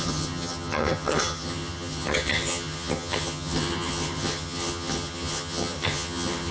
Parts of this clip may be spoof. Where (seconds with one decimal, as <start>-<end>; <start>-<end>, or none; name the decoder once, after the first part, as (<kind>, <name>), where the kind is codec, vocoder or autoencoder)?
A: 0.0-6.5 (vocoder, HiFi-GAN)

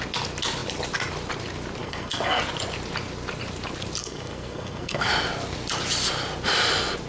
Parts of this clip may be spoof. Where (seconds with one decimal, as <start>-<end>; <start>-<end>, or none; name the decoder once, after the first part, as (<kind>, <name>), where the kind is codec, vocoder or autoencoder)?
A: 1.8-2.4 (codec, SNAC); 4.0-5.1

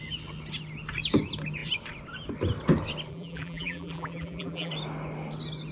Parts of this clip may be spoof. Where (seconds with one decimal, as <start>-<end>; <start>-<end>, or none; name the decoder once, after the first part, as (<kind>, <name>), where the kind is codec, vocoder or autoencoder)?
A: 3.1-4.7 (vocoder, BigVGAN v2)